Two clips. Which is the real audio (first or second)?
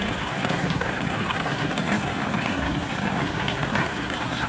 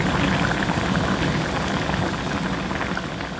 second